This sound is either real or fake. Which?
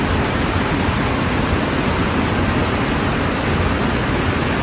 real